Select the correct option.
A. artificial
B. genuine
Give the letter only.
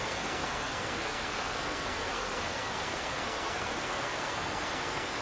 A